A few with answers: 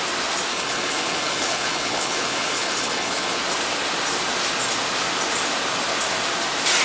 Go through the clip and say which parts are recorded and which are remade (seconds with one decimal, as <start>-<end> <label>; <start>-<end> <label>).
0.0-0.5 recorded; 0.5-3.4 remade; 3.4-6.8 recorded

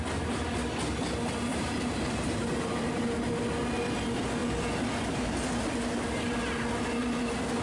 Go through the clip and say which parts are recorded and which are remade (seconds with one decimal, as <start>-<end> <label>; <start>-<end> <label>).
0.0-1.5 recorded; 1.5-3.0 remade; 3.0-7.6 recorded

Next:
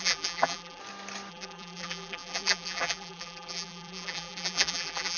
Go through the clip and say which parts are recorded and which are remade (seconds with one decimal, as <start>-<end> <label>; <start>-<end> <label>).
0.0-0.8 remade; 0.8-1.3 recorded; 1.3-5.2 remade

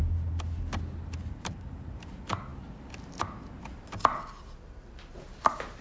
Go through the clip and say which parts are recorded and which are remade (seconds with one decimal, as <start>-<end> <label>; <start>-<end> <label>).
0.0-1.3 recorded; 1.3-2.5 remade; 2.5-5.1 recorded; 5.1-5.8 remade